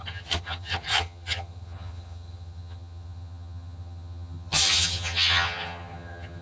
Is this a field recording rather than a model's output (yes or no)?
no